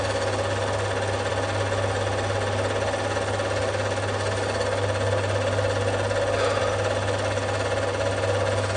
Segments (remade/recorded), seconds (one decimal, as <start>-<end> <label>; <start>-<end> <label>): 0.0-8.8 recorded